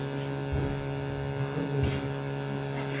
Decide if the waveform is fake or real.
real